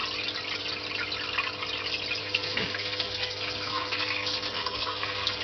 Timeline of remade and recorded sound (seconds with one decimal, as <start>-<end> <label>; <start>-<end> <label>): 0.0-2.2 recorded; 2.2-5.4 remade